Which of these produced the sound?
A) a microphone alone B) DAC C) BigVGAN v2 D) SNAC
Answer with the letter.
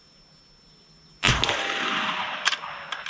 A